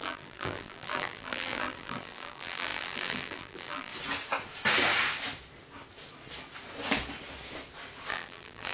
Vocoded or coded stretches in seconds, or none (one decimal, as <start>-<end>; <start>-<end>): 0.0-3.9; 8.1-8.7